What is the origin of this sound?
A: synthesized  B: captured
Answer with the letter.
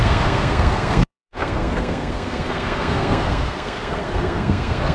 A